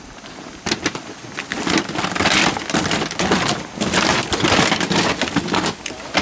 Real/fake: real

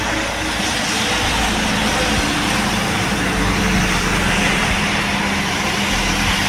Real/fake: real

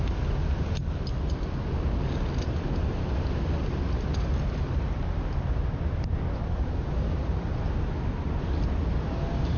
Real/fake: real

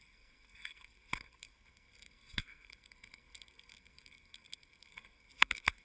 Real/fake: fake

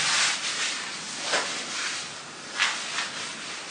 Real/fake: real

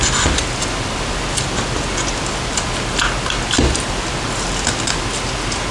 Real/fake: real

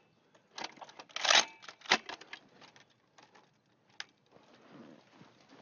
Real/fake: real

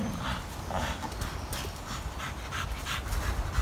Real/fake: real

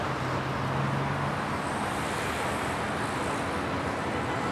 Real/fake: real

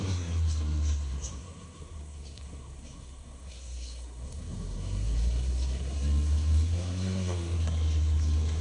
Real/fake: fake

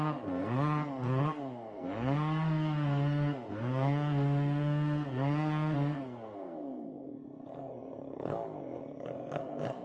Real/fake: fake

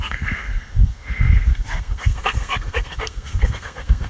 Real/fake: fake